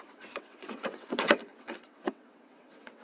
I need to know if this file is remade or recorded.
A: remade